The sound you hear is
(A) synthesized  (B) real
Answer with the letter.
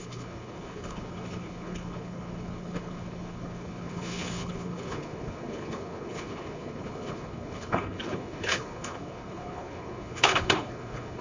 A